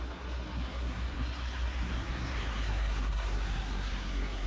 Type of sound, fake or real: fake